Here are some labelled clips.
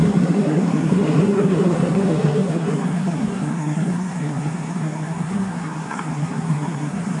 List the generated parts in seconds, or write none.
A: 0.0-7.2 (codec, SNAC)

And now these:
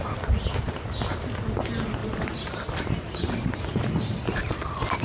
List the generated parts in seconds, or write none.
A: 2.0-3.5 (vocoder, BigVGAN v2)

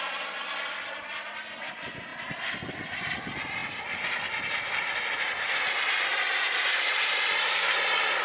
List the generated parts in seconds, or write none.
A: none

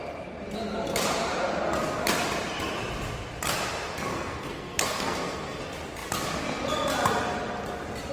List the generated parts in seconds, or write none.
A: 4.1-5.6 (codec, SNAC)

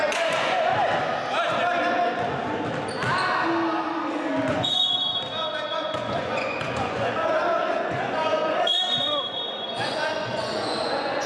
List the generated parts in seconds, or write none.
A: 0.0-0.7 (vocoder, Vocos); 4.5-5.2; 5.7-11.3

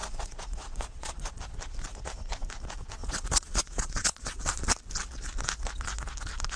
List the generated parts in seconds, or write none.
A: 0.0-1.4 (vocoder, Vocos); 3.0-4.4

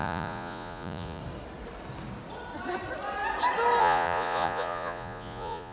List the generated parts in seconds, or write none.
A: 0.0-1.2 (vocoder, Vocos); 3.8-5.7

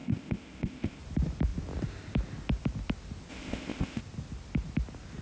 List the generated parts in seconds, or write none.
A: 0.0-1.0 (codec, ZipCodec); 3.3-4.0